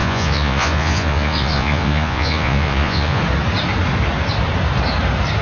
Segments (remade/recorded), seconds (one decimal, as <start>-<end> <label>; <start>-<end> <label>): 0.0-3.2 remade; 3.2-5.4 recorded

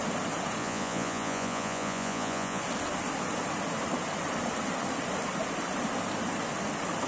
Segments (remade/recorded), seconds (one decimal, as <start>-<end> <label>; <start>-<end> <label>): 0.0-0.6 recorded; 0.6-2.6 remade; 2.6-7.1 recorded

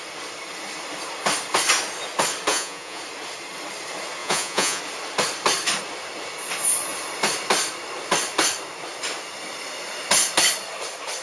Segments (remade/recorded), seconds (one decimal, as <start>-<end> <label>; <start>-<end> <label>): 0.0-2.5 recorded; 2.5-3.0 remade; 3.0-4.2 recorded; 4.2-4.8 remade; 4.8-11.2 recorded